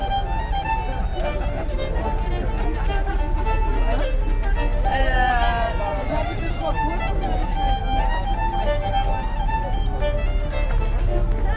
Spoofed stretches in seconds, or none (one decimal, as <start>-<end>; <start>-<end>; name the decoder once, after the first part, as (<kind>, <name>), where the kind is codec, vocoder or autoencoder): 1.1-2.0 (vocoder, BigVGAN v2); 4.9-6.9